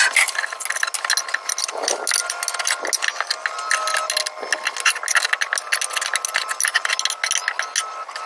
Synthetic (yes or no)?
no